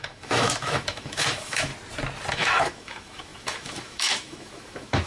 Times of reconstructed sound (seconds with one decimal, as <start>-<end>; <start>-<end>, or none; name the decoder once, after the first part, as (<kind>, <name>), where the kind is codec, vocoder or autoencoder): 0.0-1.7 (autoencoder, DAC-VAE); 2.3-5.1